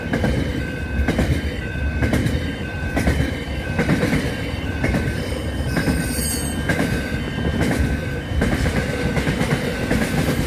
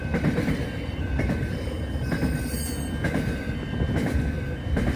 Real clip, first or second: second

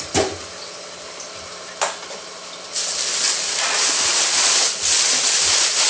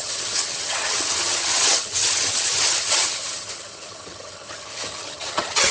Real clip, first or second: first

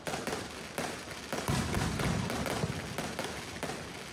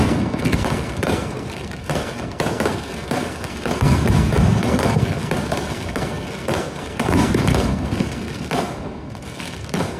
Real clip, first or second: first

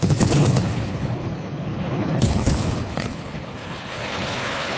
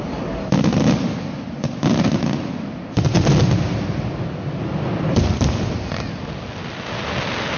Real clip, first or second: second